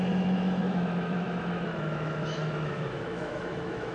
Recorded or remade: remade